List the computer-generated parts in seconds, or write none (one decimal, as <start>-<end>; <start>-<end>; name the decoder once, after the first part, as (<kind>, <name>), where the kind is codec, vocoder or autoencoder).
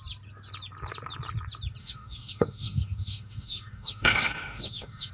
1.8-5.1 (autoencoder, DAC-VAE)